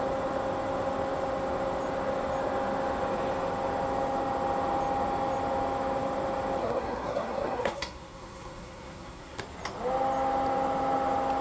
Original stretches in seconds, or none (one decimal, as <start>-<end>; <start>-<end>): 0.0-6.6; 9.4-11.4